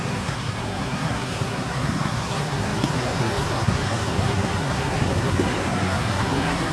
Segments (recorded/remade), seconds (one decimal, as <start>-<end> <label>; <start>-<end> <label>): 0.0-6.7 remade